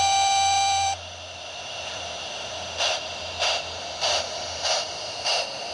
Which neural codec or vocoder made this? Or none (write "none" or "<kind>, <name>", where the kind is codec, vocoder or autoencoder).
none